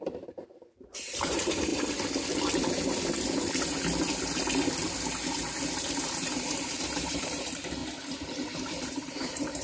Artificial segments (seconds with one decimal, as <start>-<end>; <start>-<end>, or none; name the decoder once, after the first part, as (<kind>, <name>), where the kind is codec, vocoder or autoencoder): 0.0-1.7 (vocoder, BigVGAN v2); 5.9-7.8; 8.6-9.6